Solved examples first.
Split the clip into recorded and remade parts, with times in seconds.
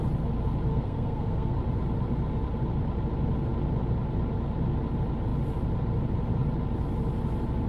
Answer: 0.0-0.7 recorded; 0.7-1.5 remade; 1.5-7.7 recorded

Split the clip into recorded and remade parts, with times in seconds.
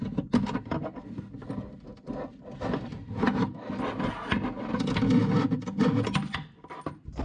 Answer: 0.0-7.2 recorded